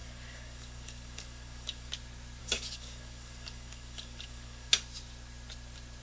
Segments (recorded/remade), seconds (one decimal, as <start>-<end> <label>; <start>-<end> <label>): 0.0-1.9 remade; 1.9-2.4 recorded; 2.4-4.7 remade; 4.7-6.0 recorded